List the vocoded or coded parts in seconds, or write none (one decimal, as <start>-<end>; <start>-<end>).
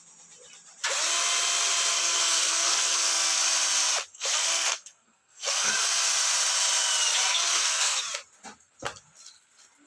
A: 1.9-3.4; 4.1-5.7; 7.5-8.0